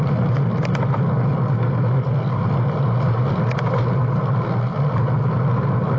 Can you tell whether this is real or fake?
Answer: real